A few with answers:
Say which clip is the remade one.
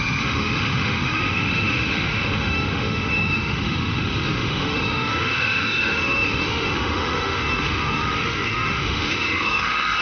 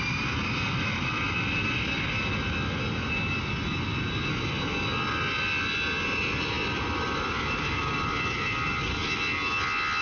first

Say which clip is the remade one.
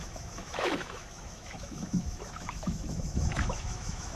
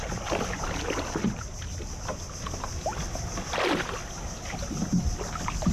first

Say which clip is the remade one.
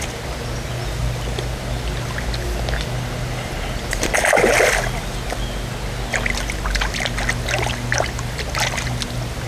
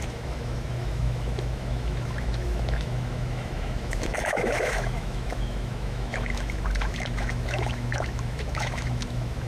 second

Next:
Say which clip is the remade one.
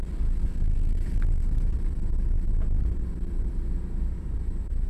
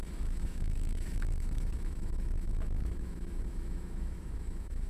second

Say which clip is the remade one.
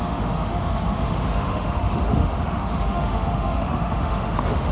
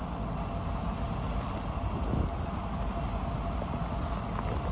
first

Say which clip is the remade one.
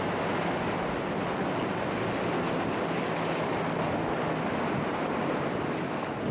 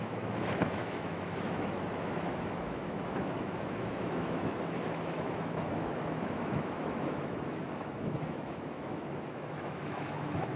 second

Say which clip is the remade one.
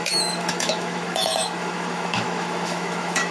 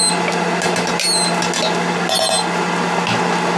first